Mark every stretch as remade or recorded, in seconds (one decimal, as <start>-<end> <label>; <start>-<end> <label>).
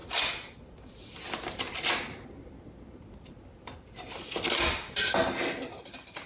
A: 0.0-6.3 recorded